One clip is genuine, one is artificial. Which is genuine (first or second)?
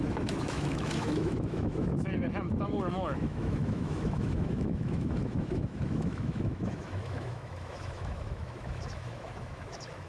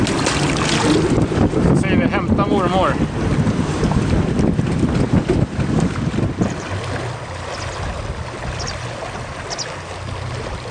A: second